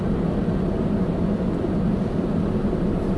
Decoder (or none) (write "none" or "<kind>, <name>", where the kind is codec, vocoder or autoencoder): none